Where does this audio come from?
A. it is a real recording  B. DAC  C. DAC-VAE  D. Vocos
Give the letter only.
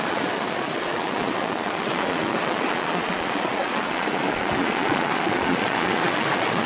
D